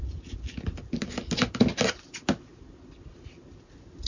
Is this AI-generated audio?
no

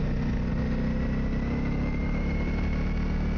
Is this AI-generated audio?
no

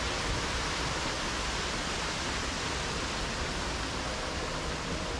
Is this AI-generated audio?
no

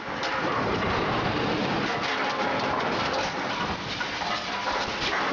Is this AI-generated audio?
no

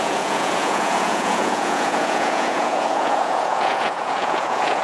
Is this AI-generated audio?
yes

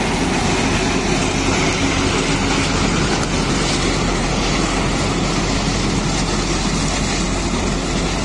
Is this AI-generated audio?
no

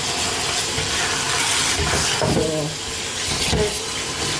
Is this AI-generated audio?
no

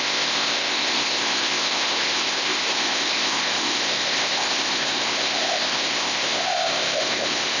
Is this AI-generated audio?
yes